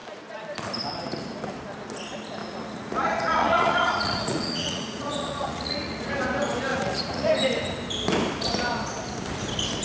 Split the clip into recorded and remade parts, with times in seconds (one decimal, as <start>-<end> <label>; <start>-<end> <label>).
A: 0.0-2.4 recorded; 2.4-6.1 remade; 6.1-6.7 recorded; 6.7-7.3 remade; 7.3-9.8 recorded